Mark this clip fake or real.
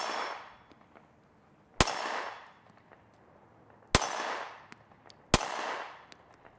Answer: real